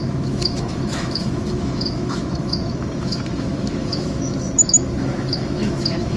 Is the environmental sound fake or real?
fake